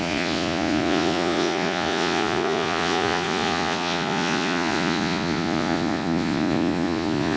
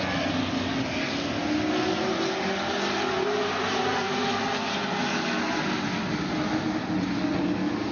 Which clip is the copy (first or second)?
first